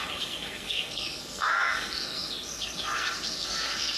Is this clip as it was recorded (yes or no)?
no